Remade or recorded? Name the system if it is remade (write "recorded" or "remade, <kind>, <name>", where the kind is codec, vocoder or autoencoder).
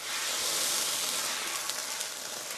recorded